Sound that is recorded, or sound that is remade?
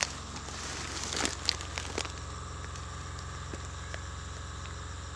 recorded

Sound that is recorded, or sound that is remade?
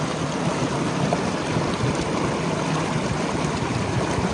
recorded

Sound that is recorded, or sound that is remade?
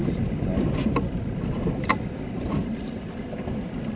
recorded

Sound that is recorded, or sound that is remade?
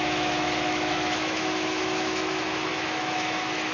remade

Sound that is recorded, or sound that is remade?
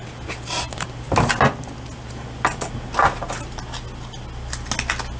recorded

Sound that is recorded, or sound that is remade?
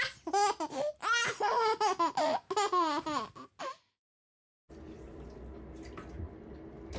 recorded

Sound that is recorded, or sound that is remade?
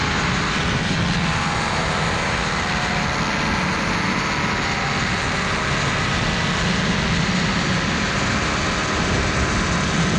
recorded